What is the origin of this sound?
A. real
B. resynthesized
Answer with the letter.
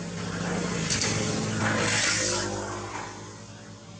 A